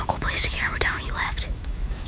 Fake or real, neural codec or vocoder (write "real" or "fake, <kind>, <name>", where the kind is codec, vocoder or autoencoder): fake, autoencoder, DAC-VAE